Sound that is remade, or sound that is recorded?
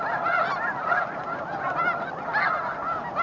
recorded